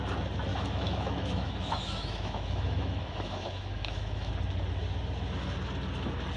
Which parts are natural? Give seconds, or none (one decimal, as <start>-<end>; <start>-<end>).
0.0-0.5; 4.3-6.4